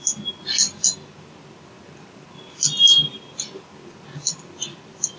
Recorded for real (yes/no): yes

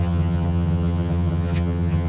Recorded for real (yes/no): no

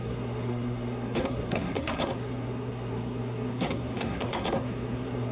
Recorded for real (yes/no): no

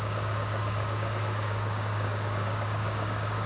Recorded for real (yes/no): no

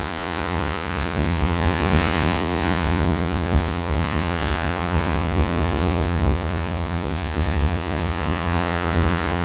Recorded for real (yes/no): no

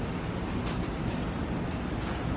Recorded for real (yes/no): yes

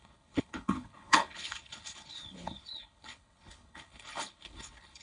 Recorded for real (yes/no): no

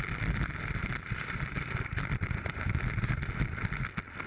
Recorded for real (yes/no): yes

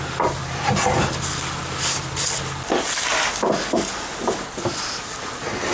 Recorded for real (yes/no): yes